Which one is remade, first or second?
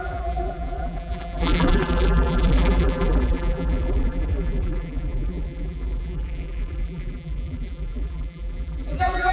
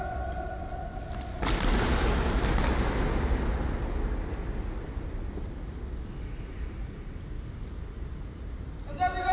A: first